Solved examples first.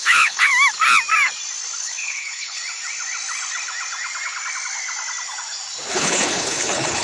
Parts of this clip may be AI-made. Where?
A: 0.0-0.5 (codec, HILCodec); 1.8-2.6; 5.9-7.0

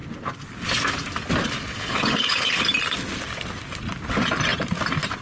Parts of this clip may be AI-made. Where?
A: 1.7-2.6 (codec, HILCodec)

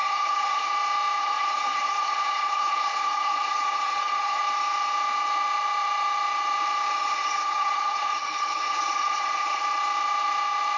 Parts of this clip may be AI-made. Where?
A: 0.0-0.7 (codec, HILCodec); 1.2-4.4; 7.0-9.6

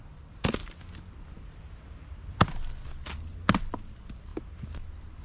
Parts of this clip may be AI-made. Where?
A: none

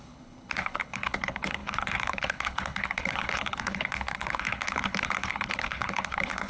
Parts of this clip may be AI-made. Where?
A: 0.0-6.5 (codec, HILCodec)

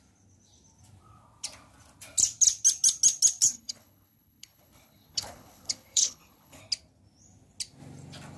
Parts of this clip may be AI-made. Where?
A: 3.4-6.6 (codec, HILCodec)